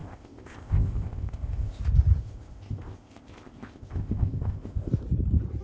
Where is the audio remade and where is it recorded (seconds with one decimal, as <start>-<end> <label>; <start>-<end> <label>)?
0.0-1.8 remade; 1.8-2.2 recorded; 2.2-4.9 remade; 4.9-5.6 recorded